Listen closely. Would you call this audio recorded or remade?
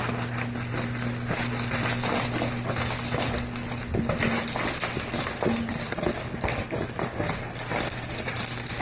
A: recorded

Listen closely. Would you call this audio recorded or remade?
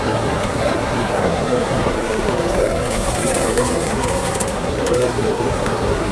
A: remade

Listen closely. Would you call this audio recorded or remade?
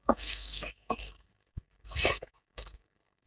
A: remade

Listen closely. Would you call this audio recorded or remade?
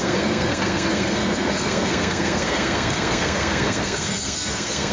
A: remade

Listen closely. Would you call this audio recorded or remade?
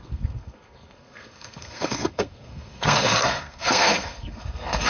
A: remade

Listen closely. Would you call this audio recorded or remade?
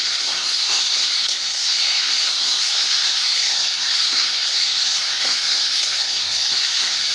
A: remade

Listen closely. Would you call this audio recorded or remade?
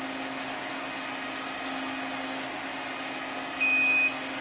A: recorded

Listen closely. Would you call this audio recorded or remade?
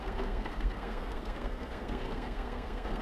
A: remade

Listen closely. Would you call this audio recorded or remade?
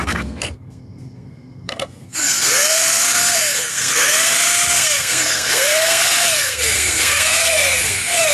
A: remade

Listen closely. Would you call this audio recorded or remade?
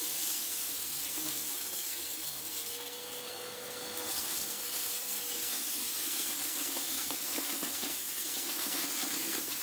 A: remade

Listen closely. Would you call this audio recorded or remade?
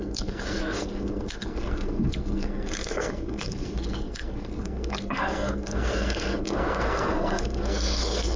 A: remade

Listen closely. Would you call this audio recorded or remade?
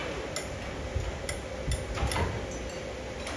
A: recorded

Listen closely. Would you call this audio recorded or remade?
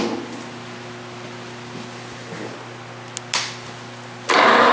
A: recorded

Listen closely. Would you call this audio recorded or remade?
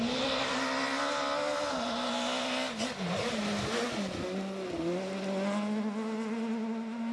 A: recorded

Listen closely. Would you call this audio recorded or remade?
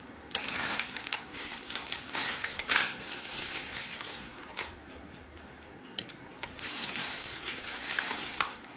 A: remade